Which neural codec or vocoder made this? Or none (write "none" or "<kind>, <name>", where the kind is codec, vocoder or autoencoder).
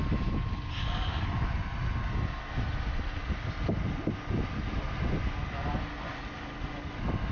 none